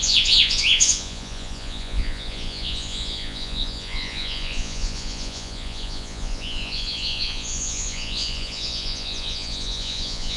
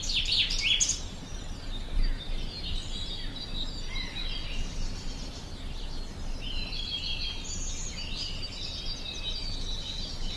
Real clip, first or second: second